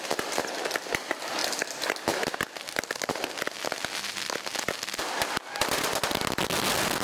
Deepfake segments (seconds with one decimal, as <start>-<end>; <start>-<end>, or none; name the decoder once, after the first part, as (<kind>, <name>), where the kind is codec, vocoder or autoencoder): none